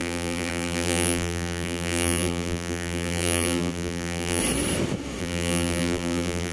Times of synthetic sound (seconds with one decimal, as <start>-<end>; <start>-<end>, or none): 0.0-4.4; 5.2-6.5